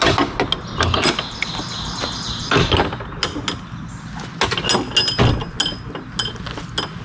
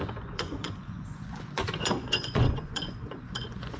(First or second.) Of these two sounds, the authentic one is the first